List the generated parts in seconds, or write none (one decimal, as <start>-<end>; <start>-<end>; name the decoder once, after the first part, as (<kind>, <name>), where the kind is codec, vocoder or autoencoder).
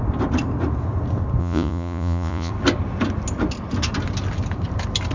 1.4-2.5 (vocoder, Vocos)